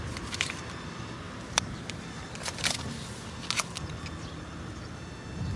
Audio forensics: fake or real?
real